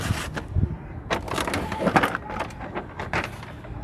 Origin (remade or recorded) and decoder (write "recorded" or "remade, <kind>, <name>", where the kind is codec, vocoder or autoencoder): recorded